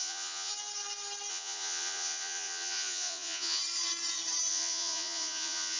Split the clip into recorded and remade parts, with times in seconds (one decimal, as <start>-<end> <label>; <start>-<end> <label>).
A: 0.0-0.5 remade; 0.5-1.3 recorded; 1.3-3.6 remade; 3.6-4.5 recorded; 4.5-5.8 remade